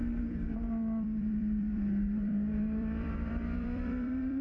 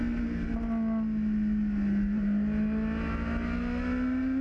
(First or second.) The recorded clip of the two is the second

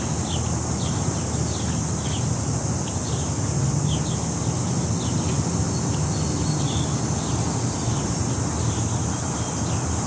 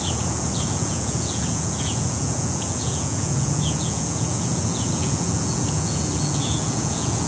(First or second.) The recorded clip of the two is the first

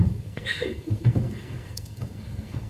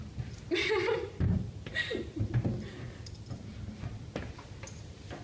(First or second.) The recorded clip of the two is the second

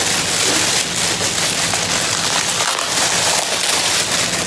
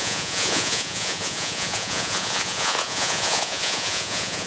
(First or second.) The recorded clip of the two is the first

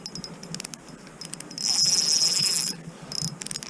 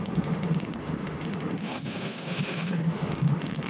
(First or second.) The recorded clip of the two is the first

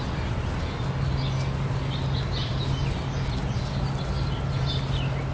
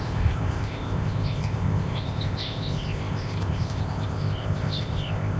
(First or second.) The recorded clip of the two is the first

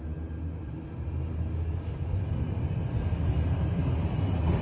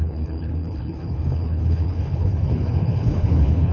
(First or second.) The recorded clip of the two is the first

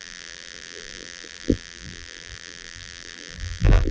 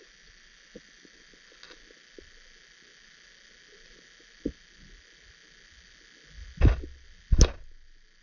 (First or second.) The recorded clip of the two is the second